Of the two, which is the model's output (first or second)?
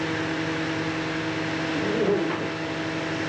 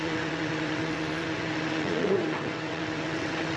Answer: second